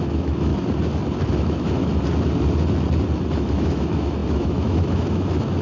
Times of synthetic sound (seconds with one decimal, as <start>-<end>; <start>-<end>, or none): 0.0-0.5; 1.3-1.8; 3.4-5.6